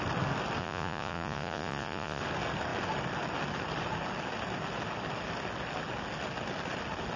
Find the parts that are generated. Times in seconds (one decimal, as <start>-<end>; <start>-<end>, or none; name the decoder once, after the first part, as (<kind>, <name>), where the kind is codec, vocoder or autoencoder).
0.6-2.2 (vocoder, Vocos)